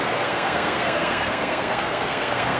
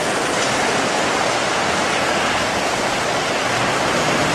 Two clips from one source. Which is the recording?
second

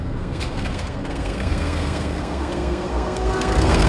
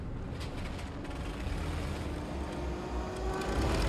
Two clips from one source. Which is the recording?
second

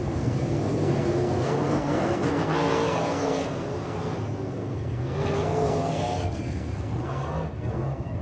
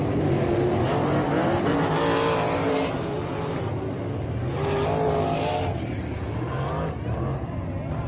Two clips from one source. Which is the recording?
second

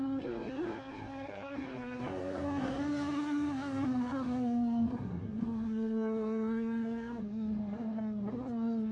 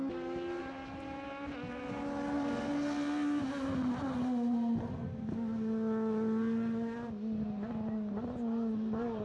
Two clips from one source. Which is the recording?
second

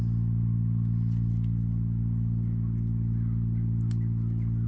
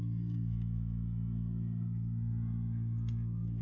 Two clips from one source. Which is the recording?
first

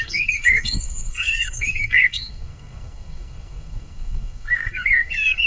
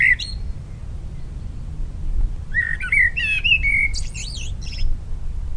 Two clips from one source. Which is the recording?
second